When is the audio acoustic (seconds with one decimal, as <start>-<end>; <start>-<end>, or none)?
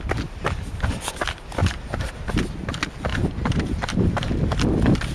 0.0-1.6; 2.1-3.1; 4.3-5.1